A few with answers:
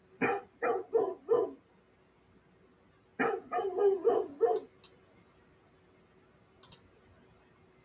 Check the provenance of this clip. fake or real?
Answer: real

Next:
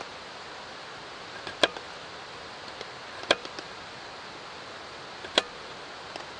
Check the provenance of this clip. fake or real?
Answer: real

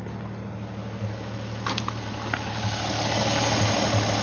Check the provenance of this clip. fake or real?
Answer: real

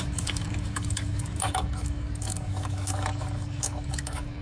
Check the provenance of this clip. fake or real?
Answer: fake